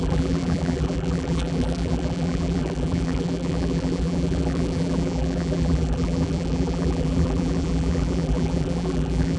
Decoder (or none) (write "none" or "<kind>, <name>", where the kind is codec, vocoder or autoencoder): vocoder, BigVGAN v2